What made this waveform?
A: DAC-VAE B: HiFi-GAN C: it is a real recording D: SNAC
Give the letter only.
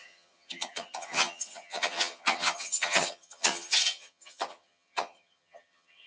B